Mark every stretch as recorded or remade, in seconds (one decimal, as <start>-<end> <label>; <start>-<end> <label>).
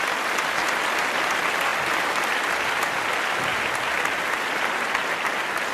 0.0-1.7 recorded; 1.7-2.5 remade; 2.5-3.5 recorded; 3.5-4.2 remade; 4.2-5.7 recorded